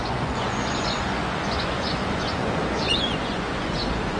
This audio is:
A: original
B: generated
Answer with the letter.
B